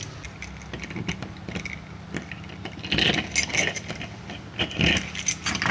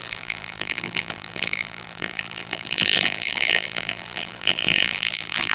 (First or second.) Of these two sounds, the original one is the first